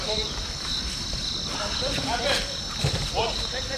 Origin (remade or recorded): recorded